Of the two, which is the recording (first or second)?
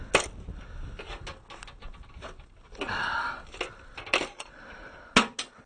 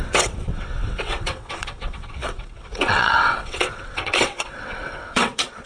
first